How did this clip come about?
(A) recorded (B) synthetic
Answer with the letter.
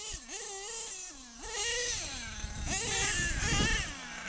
A